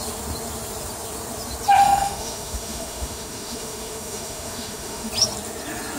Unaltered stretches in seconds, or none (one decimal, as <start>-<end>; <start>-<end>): 0.0-1.8; 5.1-6.0